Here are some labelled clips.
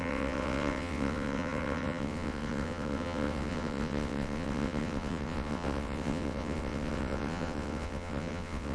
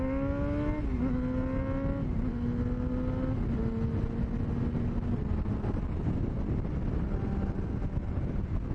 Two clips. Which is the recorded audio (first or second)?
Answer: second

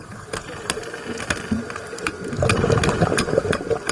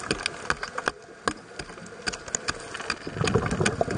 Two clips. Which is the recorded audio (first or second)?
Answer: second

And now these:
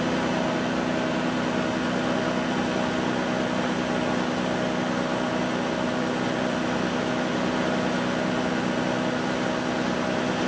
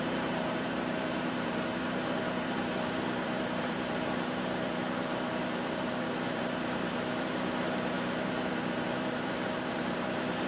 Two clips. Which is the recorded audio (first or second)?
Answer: first